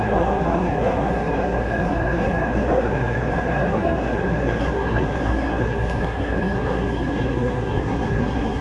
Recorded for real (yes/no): no